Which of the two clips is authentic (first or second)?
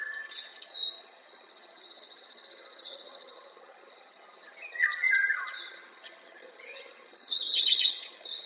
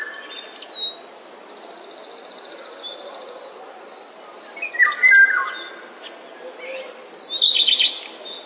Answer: second